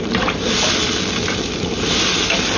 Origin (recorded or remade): recorded